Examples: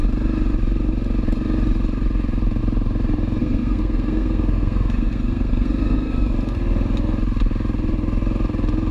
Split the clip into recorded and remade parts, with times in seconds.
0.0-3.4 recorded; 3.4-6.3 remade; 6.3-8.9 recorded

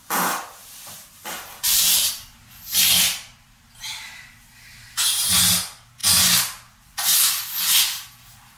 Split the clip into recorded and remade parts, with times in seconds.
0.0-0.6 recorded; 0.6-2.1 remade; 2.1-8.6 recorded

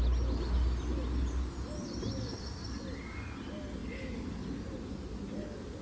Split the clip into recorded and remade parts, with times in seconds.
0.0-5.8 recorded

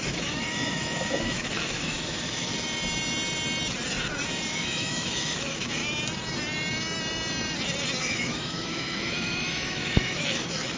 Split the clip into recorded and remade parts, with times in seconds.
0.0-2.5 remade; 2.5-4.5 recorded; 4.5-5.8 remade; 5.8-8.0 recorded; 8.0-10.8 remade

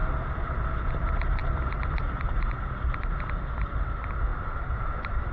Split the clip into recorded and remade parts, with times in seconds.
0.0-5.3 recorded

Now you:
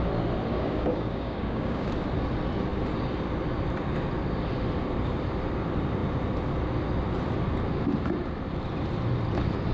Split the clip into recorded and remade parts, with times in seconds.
0.0-0.5 recorded; 0.5-1.9 remade; 1.9-9.7 recorded

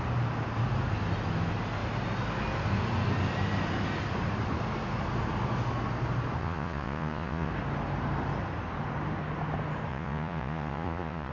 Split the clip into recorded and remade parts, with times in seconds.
0.0-6.4 recorded; 6.4-7.5 remade; 7.5-9.9 recorded; 9.9-11.3 remade